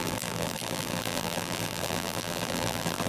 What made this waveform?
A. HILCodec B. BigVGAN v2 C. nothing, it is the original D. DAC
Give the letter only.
B